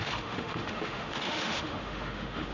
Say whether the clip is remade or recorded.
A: remade